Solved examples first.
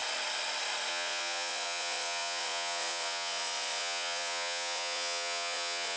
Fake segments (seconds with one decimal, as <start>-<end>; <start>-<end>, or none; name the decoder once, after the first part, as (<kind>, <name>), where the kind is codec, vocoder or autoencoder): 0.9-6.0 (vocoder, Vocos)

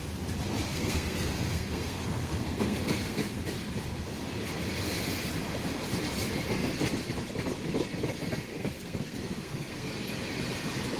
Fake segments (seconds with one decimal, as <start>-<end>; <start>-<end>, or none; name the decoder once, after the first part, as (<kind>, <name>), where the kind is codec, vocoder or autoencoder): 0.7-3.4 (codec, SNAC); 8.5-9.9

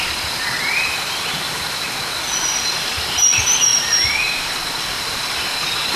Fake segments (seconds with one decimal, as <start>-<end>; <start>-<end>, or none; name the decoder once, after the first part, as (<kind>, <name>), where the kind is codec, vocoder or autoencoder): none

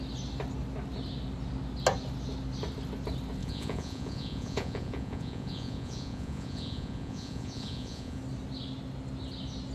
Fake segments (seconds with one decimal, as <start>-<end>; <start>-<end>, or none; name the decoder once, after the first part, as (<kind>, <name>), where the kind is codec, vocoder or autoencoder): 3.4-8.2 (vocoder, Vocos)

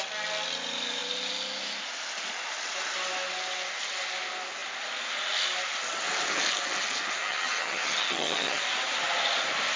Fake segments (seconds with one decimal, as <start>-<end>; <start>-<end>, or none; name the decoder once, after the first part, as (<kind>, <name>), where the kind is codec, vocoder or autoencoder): 7.2-8.6 (vocoder, HiFi-GAN)

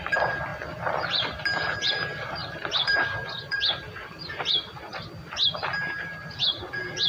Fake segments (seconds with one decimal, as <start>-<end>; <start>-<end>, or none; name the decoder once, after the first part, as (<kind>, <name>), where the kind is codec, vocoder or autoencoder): 0.0-0.5 (vocoder, BigVGAN v2); 1.9-4.9

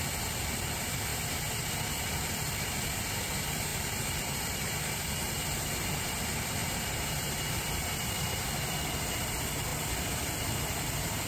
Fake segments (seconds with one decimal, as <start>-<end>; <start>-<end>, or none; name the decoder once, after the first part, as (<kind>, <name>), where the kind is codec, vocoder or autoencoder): 3.7-5.0 (vocoder, BigVGAN v2); 6.6-7.6